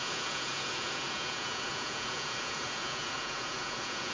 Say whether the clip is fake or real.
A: fake